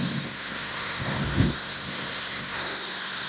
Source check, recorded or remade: remade